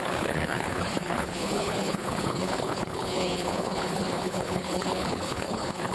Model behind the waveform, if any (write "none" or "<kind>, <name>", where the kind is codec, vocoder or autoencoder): codec, HILCodec